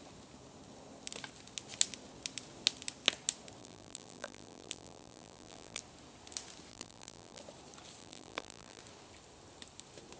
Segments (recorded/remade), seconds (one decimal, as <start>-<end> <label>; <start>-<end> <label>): 0.0-3.6 recorded; 3.6-5.8 remade; 5.8-6.7 recorded; 6.7-7.4 remade; 7.4-8.0 recorded; 8.0-8.8 remade; 8.8-10.2 recorded